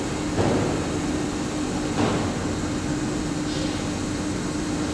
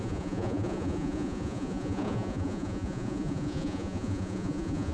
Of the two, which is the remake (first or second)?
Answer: second